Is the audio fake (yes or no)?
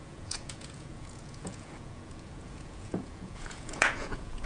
yes